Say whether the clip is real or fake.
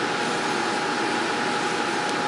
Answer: real